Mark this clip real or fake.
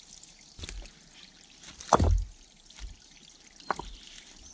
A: real